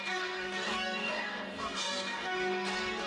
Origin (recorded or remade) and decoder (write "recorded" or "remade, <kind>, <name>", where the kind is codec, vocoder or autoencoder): remade, codec, DAC